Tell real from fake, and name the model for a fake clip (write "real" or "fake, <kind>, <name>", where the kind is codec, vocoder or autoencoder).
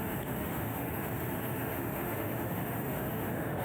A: fake, autoencoder, DAC-VAE